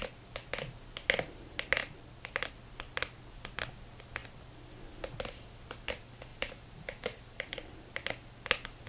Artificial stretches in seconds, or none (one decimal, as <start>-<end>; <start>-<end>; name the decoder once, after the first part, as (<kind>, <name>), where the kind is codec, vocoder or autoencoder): 4.2-4.7 (vocoder, BigVGAN v2); 6.3-7.7